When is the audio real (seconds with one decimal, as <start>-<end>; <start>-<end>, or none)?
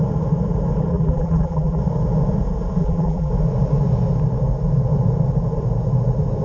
0.0-0.9; 1.8-2.8; 3.3-6.4